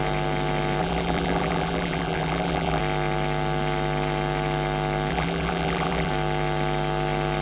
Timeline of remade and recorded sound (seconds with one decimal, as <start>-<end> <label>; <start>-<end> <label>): 0.0-0.8 recorded; 0.8-2.8 remade; 2.8-5.1 recorded; 5.1-6.1 remade; 6.1-7.4 recorded